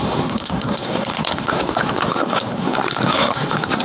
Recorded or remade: remade